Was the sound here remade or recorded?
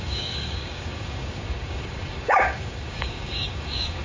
remade